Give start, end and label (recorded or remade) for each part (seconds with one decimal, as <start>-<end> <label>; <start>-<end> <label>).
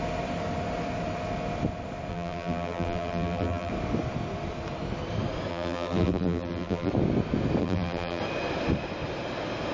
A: 0.0-2.1 recorded; 2.1-3.7 remade; 3.7-5.5 recorded; 5.5-6.9 remade; 6.9-7.6 recorded; 7.6-8.2 remade; 8.2-9.7 recorded